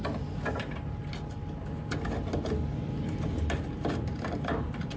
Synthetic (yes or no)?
no